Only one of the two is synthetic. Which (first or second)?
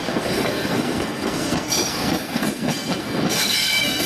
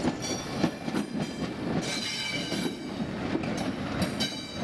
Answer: first